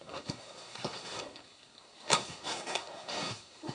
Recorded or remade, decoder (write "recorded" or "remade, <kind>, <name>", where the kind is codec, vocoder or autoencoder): remade, codec, SNAC